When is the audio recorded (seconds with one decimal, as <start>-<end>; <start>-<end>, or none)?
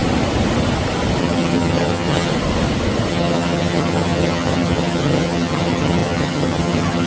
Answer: 0.0-1.2; 2.3-3.1